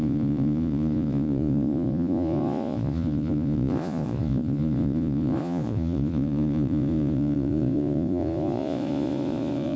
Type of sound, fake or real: fake